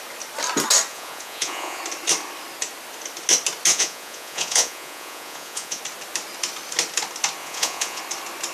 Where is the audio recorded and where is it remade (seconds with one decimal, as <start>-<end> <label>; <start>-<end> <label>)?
0.0-0.9 recorded; 0.9-1.8 remade; 1.8-3.7 recorded; 3.7-5.8 remade; 5.8-7.4 recorded; 7.4-8.0 remade; 8.0-8.5 recorded